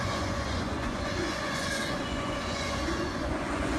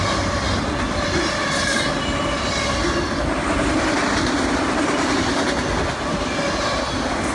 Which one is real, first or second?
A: second